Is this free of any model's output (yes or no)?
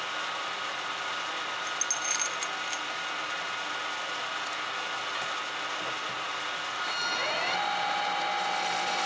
yes